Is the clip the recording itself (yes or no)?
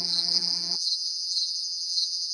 no